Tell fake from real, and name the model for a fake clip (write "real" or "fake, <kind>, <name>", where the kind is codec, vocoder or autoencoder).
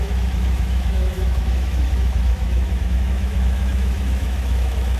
fake, autoencoder, DAC-VAE